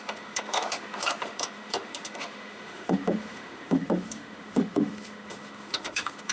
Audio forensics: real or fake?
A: fake